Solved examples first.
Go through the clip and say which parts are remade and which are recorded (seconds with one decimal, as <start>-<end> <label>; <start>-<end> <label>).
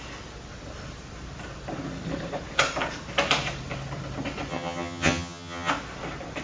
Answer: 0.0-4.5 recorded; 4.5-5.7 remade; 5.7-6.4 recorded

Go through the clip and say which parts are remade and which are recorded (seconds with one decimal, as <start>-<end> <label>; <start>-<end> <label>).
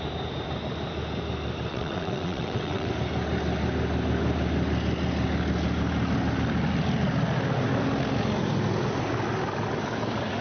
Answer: 0.0-1.7 recorded; 1.7-2.9 remade; 2.9-10.4 recorded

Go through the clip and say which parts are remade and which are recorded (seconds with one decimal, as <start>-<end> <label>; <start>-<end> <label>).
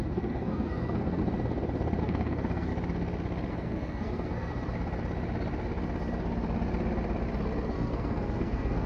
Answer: 0.0-1.2 remade; 1.2-2.0 recorded; 2.0-2.7 remade; 2.7-3.5 recorded; 3.5-4.5 remade; 4.5-7.7 recorded; 7.7-8.9 remade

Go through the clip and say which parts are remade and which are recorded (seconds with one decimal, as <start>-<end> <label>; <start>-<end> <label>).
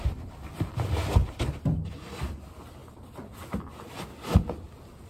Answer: 0.0-5.1 recorded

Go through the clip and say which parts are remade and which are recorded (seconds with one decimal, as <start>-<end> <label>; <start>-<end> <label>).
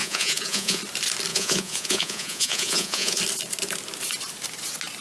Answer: 0.0-0.8 remade; 0.8-1.3 recorded; 1.3-3.2 remade; 3.2-5.0 recorded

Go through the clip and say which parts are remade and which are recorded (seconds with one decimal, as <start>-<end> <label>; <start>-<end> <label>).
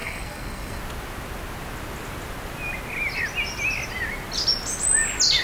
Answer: 0.0-0.8 remade; 0.8-5.4 recorded